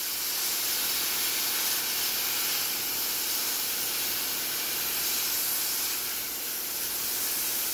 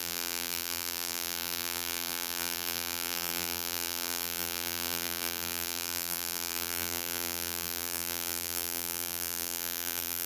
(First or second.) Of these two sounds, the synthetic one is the second